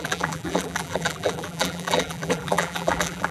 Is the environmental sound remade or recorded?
remade